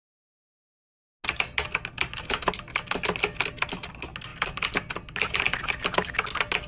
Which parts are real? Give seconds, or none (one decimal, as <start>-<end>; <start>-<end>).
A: 0.0-6.7